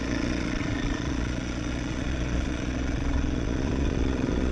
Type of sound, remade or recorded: remade